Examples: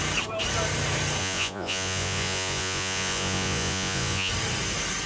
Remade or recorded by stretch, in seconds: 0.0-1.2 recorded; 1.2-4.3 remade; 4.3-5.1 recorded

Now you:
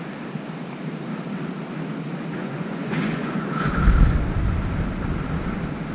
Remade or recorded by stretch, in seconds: 0.0-2.4 recorded; 2.4-3.8 remade; 3.8-5.9 recorded

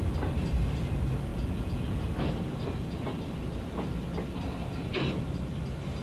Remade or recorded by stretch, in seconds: 0.0-1.3 recorded; 1.3-2.1 remade; 2.1-6.0 recorded

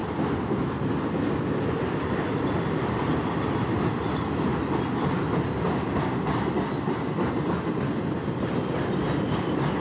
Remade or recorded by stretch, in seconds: 0.0-9.8 recorded

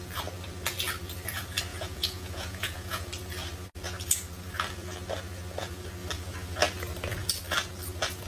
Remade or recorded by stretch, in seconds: 0.0-1.7 recorded; 1.7-3.1 remade; 3.1-8.3 recorded

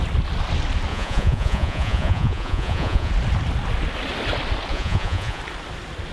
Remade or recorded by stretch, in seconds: 0.0-0.9 recorded; 0.9-3.1 remade; 3.1-4.7 recorded; 4.7-5.4 remade; 5.4-6.1 recorded

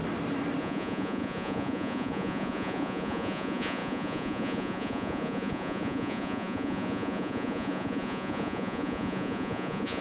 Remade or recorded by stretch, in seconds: 0.0-0.6 recorded; 0.6-10.0 remade

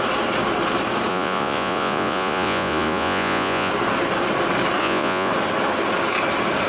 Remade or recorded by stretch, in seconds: 0.0-1.1 recorded; 1.1-3.7 remade; 3.7-4.8 recorded; 4.8-5.3 remade; 5.3-6.7 recorded